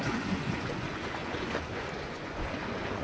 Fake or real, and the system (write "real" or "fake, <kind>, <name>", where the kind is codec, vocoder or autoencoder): fake, vocoder, Vocos